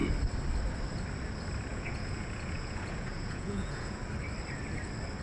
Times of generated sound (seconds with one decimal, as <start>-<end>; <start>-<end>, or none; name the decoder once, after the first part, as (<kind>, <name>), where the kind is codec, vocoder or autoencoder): 1.7-4.0 (vocoder, Vocos)